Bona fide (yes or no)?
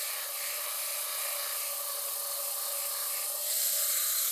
yes